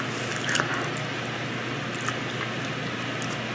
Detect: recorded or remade recorded